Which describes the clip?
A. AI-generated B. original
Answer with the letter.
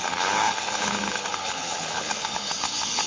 A